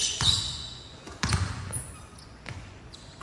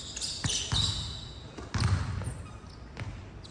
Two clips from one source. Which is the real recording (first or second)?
second